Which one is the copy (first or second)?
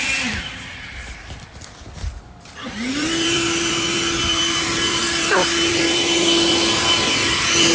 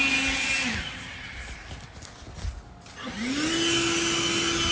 first